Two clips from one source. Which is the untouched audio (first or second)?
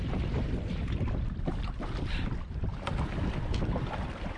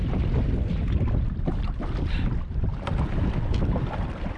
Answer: second